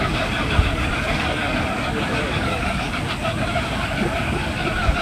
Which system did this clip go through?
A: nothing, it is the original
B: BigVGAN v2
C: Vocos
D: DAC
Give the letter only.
D